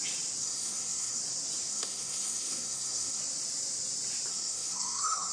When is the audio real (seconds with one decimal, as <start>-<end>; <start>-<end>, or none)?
0.0-0.4; 1.2-1.7; 3.2-4.3